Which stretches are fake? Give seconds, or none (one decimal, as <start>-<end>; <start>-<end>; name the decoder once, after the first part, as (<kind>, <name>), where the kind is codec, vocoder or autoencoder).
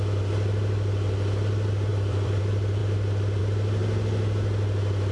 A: 1.9-2.4 (vocoder, BigVGAN v2)